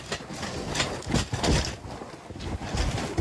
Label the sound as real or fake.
real